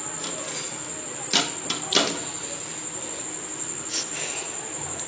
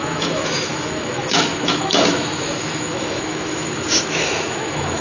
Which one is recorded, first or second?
first